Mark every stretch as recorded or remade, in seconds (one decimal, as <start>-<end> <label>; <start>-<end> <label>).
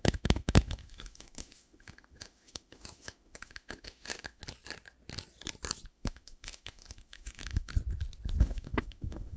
0.0-4.4 remade; 4.4-5.9 recorded; 5.9-7.7 remade; 7.7-8.4 recorded; 8.4-9.4 remade